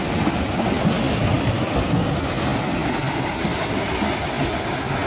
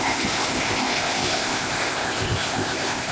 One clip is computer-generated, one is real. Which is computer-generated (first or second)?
second